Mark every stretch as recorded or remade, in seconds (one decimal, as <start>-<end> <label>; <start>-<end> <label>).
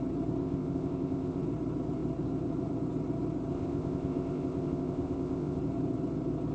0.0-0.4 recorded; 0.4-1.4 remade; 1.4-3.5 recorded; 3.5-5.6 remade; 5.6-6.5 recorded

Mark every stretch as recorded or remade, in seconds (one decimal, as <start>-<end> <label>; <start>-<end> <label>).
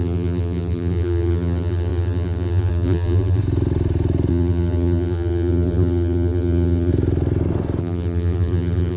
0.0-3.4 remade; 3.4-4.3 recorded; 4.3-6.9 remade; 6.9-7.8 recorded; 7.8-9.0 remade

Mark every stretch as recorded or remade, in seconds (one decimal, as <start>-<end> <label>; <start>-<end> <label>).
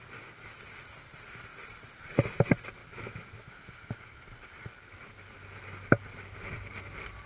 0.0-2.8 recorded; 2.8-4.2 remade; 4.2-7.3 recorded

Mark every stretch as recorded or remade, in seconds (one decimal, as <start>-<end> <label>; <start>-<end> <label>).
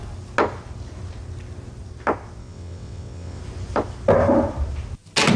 0.0-2.4 recorded; 2.4-3.4 remade; 3.4-5.4 recorded